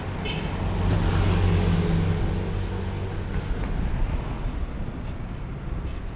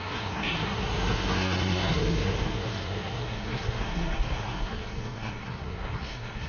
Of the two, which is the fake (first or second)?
second